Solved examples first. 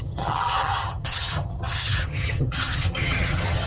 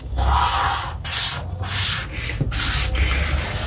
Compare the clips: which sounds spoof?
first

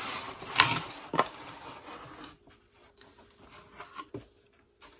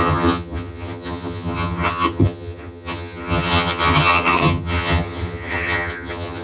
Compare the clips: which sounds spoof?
second